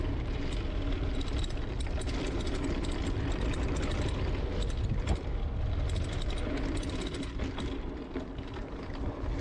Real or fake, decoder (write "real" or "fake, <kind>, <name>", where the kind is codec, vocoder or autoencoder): real